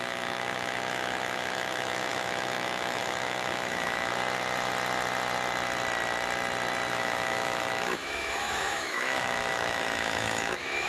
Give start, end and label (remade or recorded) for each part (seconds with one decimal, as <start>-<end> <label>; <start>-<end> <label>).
0.0-4.1 remade; 4.1-6.9 recorded; 6.9-10.9 remade